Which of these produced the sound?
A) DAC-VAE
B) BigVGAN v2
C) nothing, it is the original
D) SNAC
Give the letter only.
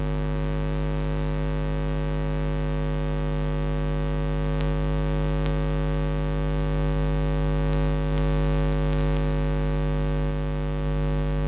C